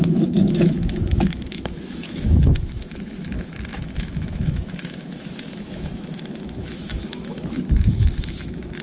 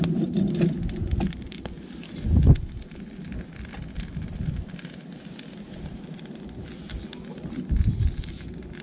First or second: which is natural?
second